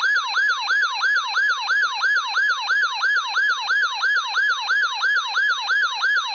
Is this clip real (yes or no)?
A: yes